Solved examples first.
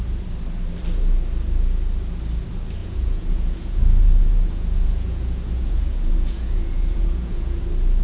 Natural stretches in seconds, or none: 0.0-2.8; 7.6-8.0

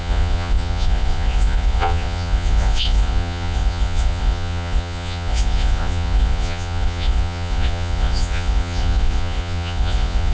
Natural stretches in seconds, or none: none

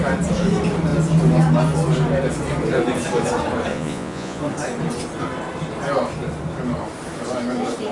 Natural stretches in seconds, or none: 0.0-3.7; 4.4-7.9

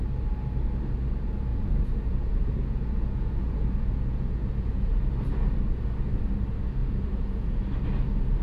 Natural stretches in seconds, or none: 0.0-1.5; 5.0-6.8; 7.6-8.4